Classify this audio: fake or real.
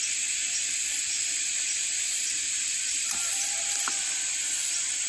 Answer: fake